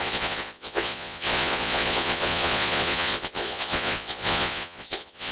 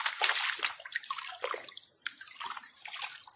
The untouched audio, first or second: second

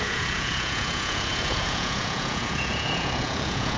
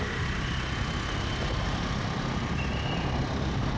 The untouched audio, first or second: second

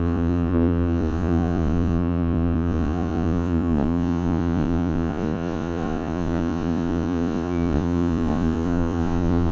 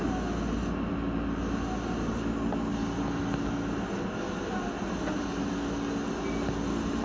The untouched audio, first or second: second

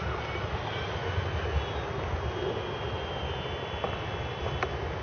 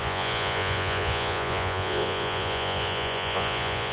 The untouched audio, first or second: first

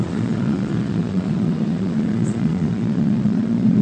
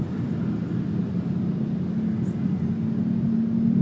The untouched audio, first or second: second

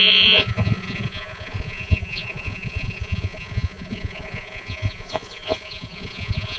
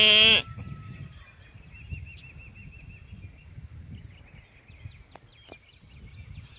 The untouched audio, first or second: second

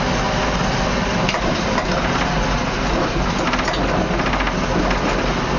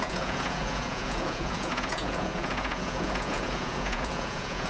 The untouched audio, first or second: first